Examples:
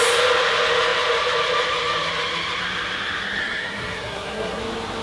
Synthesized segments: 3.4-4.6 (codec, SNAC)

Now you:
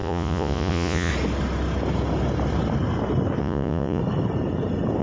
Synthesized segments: 0.0-1.1 (vocoder, Vocos); 3.4-4.0

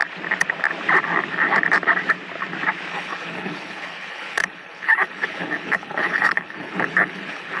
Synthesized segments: 2.9-7.6 (codec, HILCodec)

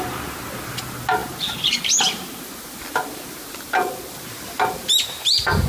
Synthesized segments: none